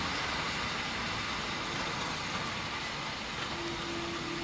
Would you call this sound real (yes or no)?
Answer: yes